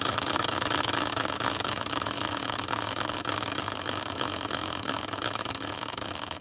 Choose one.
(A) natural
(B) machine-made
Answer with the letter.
B